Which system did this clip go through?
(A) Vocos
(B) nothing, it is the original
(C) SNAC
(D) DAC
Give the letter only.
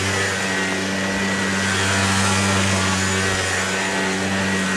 B